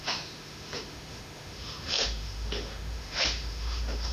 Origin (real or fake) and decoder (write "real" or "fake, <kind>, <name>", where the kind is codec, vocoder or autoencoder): fake, autoencoder, DAC-VAE